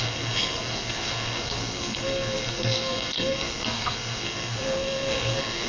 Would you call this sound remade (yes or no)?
yes